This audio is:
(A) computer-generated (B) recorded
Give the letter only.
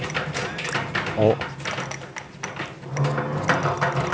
B